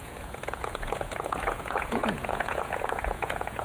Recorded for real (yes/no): no